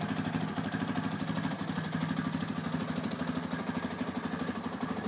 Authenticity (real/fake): real